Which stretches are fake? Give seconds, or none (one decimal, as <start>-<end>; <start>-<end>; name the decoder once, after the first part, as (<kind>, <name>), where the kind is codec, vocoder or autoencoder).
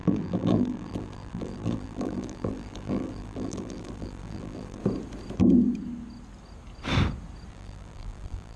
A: 0.0-4.8 (vocoder, BigVGAN v2); 7.5-8.6